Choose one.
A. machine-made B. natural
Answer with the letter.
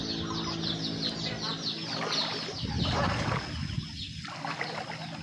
B